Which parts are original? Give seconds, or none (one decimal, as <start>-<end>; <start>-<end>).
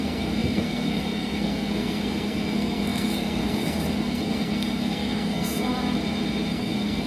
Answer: 5.7-6.5